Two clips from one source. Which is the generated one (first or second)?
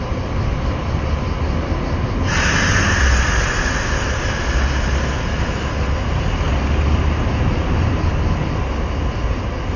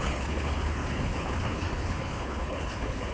second